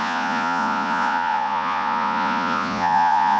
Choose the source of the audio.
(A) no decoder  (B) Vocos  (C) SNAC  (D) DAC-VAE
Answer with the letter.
B